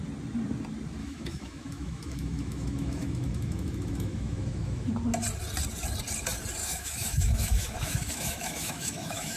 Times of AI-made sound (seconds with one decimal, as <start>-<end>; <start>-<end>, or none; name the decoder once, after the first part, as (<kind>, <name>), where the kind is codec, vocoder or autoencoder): 1.0-4.9 (autoencoder, DAC-VAE); 6.6-9.4